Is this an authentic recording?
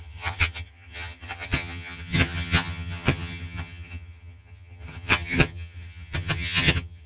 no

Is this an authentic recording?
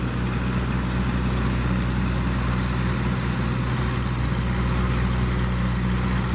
yes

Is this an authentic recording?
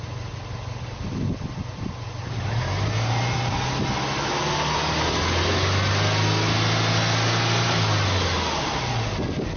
yes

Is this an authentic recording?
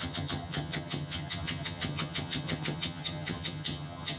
no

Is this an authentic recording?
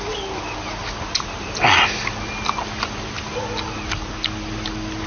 yes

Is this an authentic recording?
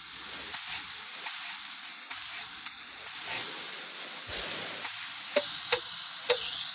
yes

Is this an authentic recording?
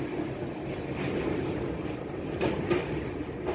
yes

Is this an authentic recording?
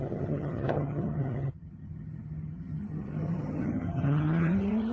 no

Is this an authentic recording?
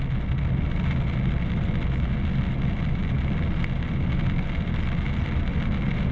yes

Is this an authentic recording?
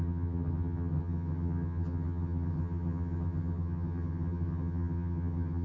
no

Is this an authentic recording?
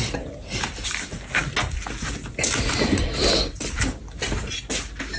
yes